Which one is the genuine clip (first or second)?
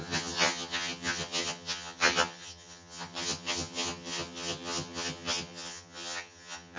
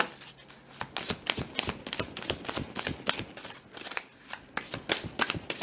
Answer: second